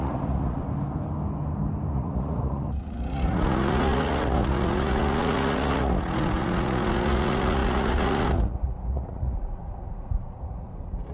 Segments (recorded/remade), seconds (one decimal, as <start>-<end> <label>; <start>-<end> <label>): 0.0-0.6 remade; 0.6-1.9 recorded; 1.9-11.1 remade